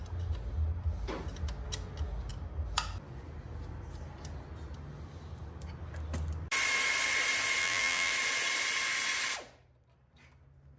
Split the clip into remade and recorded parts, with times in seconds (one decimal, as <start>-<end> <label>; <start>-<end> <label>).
0.0-7.6 recorded; 7.6-8.1 remade; 8.1-10.8 recorded